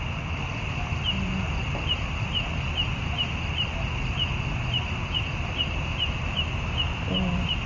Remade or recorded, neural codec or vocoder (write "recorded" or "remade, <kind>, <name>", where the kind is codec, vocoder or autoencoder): recorded